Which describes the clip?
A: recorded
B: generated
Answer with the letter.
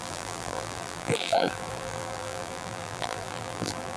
B